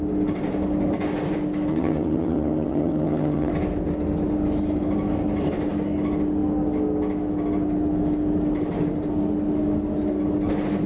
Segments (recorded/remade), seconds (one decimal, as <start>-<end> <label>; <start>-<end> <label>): 0.0-1.7 recorded; 1.7-3.5 remade; 3.5-10.9 recorded